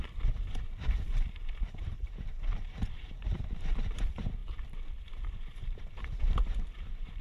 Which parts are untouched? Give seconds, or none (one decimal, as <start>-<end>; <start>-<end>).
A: none